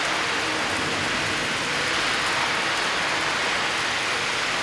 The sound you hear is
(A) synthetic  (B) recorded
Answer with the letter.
B